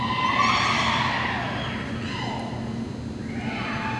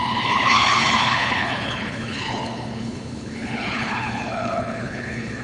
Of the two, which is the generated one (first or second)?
second